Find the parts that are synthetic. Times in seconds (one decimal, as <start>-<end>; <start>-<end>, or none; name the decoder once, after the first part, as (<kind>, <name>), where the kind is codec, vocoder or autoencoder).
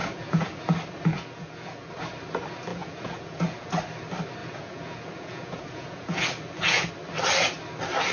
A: 0.0-0.6 (vocoder, Vocos); 1.1-1.9; 2.7-3.7; 4.4-6.9